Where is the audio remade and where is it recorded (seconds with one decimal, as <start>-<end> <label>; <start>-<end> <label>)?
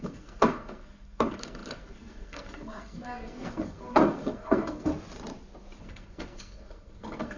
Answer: 0.0-4.9 remade; 4.9-5.8 recorded; 5.8-7.4 remade